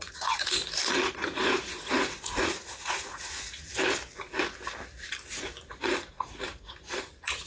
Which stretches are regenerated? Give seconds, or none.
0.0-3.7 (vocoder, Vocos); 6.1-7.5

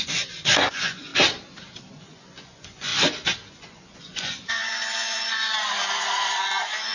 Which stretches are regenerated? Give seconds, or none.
0.0-1.1 (vocoder, Vocos); 2.0-2.9; 3.5-6.9

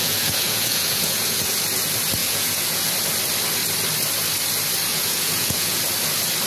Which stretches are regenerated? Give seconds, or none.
0.0-1.6 (vocoder, Vocos); 2.2-2.9; 4.9-5.8

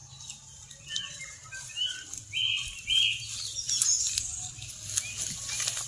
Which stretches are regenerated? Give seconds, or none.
none

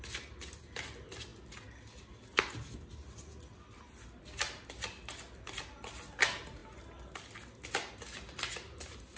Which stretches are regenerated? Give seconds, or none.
none

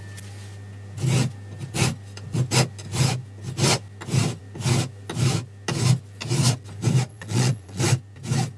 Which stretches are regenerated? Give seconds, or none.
7.1-7.8 (vocoder, Vocos)